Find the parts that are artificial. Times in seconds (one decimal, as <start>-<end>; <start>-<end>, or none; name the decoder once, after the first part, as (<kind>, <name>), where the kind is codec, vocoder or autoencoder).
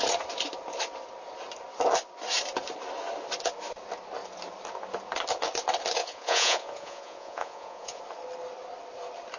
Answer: 6.0-8.0 (vocoder, Vocos)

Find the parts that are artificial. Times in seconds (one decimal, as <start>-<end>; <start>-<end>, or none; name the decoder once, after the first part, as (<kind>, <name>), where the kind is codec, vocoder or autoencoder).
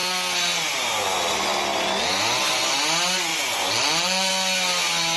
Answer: 3.3-4.3 (vocoder, Vocos)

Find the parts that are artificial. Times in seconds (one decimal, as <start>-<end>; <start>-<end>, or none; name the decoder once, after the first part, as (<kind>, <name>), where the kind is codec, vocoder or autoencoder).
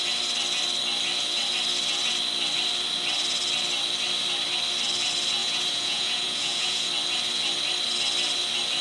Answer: 5.4-6.9 (vocoder, Vocos)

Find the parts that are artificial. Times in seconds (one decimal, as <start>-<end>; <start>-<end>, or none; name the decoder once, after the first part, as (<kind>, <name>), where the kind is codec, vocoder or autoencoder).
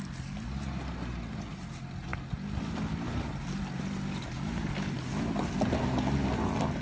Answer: none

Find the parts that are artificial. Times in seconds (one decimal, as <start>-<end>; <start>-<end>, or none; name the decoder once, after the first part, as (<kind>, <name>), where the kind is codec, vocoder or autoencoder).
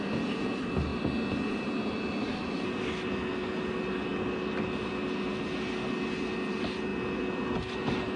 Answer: none